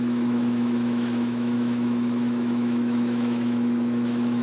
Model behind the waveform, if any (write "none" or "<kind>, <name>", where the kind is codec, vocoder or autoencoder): autoencoder, DAC-VAE